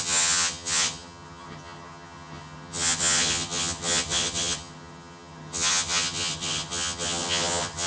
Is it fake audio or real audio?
fake